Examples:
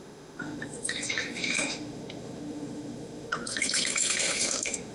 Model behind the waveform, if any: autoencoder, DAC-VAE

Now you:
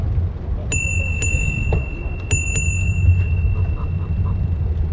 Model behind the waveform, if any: none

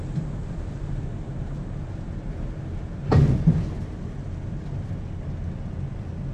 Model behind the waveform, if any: none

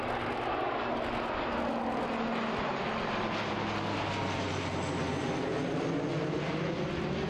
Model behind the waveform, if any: none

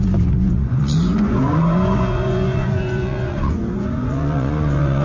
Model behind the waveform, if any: vocoder, Vocos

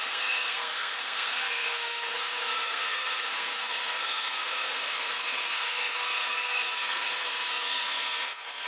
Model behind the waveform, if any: codec, SNAC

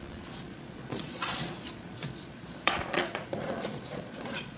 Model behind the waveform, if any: vocoder, Vocos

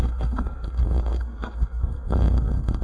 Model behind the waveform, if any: codec, SNAC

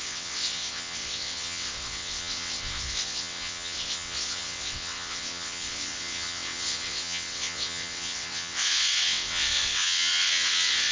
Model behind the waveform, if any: vocoder, WaveNeXt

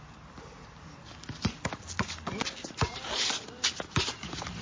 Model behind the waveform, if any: none